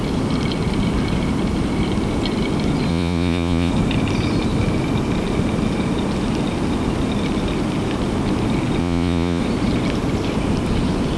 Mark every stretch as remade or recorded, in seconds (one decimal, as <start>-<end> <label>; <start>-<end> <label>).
0.0-2.9 recorded; 2.9-3.7 remade; 3.7-8.8 recorded; 8.8-9.4 remade; 9.4-11.2 recorded